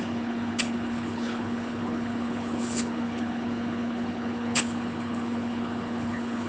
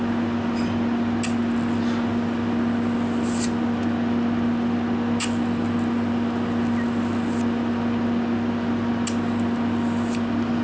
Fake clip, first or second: first